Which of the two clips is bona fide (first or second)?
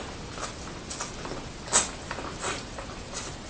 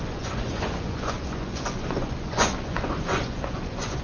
first